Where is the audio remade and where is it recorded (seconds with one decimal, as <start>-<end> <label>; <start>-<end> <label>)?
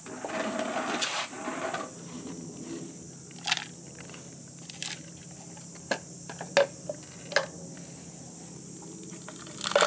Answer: 0.0-9.9 recorded